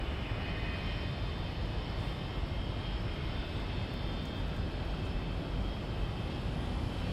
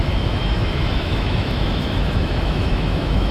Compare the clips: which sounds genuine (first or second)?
first